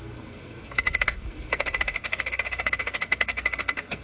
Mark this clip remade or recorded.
remade